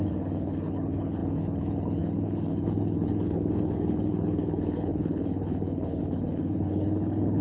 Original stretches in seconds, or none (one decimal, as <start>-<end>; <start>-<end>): none

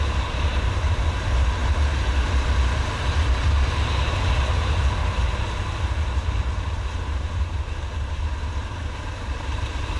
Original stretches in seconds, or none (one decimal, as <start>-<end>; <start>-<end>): 5.0-6.5

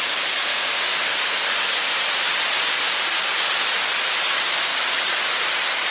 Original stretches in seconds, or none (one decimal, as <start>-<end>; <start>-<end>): 0.0-0.5; 1.1-4.7; 5.3-5.9

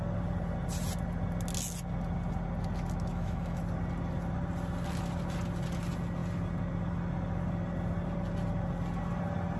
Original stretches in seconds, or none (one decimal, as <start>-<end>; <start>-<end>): 0.0-3.1; 3.6-9.6

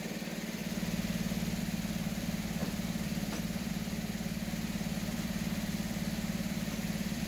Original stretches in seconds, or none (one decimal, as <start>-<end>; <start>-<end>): 0.6-1.6

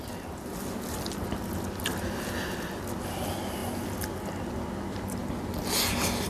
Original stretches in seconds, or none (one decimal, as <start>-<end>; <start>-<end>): 0.0-6.3